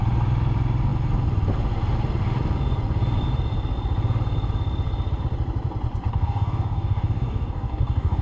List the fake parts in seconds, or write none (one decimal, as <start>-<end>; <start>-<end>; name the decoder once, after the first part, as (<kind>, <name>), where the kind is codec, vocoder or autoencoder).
6.1-8.2 (codec, DAC)